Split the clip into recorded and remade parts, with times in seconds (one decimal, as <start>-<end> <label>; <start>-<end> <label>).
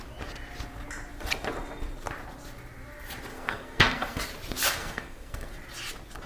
0.0-3.3 recorded; 3.3-4.2 remade; 4.2-4.8 recorded; 4.8-5.5 remade; 5.5-6.3 recorded